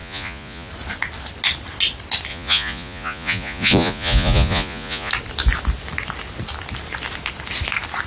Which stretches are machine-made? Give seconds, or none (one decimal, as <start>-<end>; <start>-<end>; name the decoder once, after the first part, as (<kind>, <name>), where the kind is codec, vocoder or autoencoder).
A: 0.0-0.7 (vocoder, Vocos); 2.3-5.1